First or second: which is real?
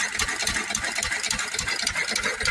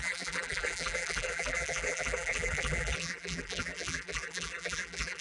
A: first